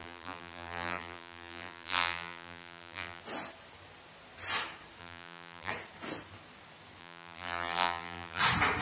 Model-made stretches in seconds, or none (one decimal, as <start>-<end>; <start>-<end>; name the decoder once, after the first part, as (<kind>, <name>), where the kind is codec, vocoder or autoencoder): 0.0-3.2 (vocoder, BigVGAN v2); 5.0-5.7; 7.0-8.4